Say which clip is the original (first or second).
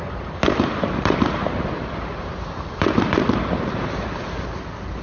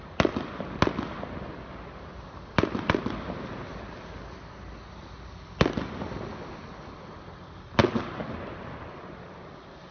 second